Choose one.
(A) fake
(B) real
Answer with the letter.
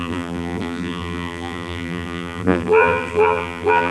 A